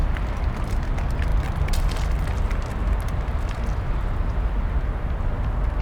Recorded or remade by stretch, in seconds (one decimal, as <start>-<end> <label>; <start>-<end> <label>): 0.0-0.5 remade; 0.5-3.3 recorded; 3.3-4.6 remade; 4.6-5.8 recorded